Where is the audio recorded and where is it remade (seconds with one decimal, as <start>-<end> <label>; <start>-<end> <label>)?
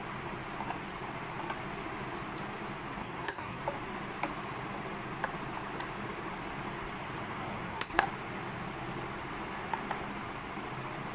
0.0-3.0 recorded; 3.0-3.6 remade; 3.6-7.4 recorded; 7.4-8.1 remade; 8.1-11.1 recorded